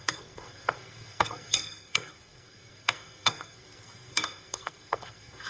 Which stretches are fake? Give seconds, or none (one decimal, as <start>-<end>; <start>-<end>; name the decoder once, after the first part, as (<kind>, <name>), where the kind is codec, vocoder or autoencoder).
0.0-5.5 (codec, SNAC)